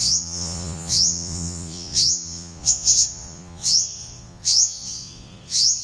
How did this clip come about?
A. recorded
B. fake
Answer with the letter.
B